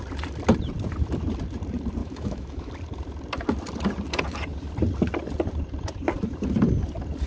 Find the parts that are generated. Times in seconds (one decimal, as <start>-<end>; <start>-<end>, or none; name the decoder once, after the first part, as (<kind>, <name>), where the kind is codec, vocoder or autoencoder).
2.0-2.7 (autoencoder, DAC-VAE)